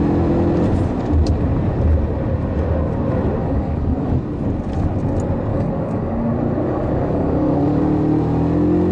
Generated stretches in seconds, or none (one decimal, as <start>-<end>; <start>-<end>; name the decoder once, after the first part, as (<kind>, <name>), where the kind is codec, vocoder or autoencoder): 3.4-4.2 (codec, DAC); 5.5-7.8